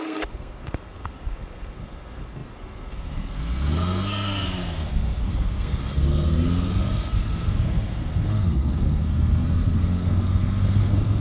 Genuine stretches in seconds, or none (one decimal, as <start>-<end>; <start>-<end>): none